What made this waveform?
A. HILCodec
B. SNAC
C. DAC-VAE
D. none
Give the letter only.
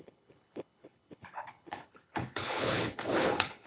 A